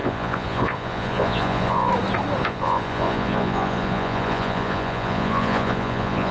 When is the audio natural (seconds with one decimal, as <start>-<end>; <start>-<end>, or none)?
1.9-2.4